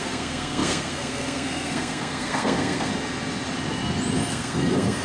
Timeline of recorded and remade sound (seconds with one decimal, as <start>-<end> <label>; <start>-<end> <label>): 0.0-2.9 remade; 2.9-4.3 recorded; 4.3-5.0 remade